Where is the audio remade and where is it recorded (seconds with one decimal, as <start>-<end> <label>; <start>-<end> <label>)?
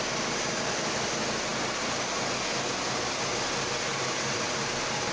0.0-3.9 recorded; 3.9-5.1 remade